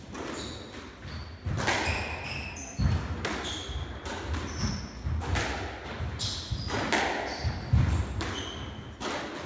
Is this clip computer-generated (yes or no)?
no